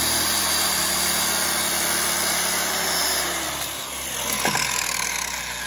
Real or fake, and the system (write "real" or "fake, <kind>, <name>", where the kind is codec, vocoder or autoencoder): real